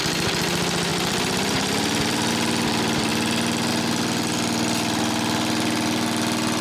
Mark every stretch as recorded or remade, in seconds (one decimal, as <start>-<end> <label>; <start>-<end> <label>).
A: 0.0-0.9 recorded; 0.9-2.3 remade; 2.3-6.6 recorded